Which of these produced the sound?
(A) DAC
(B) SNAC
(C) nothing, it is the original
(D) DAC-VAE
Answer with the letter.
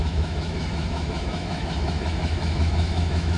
D